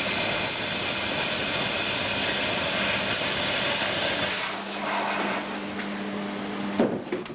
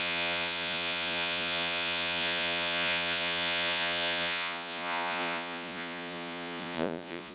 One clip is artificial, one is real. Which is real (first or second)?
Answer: first